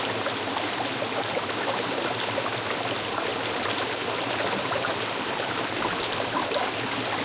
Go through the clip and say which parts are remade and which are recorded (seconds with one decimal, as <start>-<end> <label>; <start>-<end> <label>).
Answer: 0.0-7.2 recorded